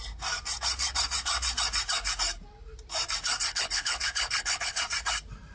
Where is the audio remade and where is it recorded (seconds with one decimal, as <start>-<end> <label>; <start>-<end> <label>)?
0.0-3.5 recorded; 3.5-4.8 remade; 4.8-5.5 recorded